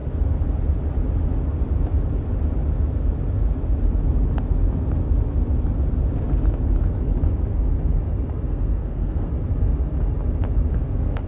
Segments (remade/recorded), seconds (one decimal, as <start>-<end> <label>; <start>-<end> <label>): 0.0-8.5 recorded; 8.5-9.3 remade; 9.3-10.7 recorded; 10.7-11.3 remade